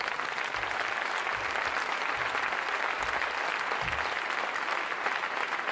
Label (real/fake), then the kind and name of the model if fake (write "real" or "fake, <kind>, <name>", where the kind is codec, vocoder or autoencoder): real